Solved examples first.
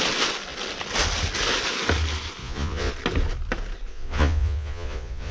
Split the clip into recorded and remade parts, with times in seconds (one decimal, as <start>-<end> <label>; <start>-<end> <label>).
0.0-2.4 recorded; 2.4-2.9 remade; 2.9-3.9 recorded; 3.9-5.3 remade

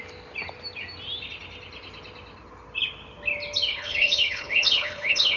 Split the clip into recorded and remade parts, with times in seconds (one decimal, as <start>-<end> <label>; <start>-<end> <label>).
0.0-3.7 recorded; 3.7-5.4 remade

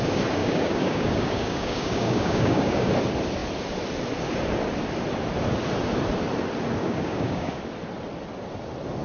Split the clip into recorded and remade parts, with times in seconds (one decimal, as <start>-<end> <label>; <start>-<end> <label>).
0.0-0.4 recorded; 0.4-2.9 remade; 2.9-6.8 recorded; 6.8-7.6 remade; 7.6-9.0 recorded

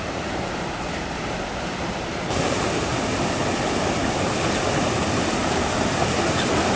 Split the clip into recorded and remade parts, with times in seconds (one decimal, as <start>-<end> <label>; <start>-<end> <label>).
0.0-2.9 remade; 2.9-4.8 recorded; 4.8-5.4 remade; 5.4-6.8 recorded

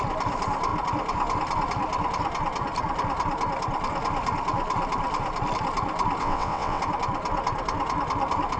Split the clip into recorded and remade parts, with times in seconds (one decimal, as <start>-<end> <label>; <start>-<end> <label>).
0.0-6.2 recorded; 6.2-6.8 remade; 6.8-8.6 recorded

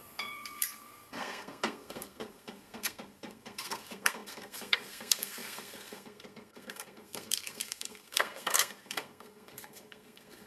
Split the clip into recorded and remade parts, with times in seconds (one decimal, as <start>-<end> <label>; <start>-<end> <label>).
0.0-10.5 remade